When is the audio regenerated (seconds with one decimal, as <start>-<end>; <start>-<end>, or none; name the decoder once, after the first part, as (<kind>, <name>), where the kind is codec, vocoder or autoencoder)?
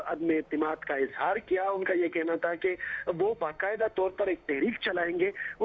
1.1-4.5 (autoencoder, DAC-VAE)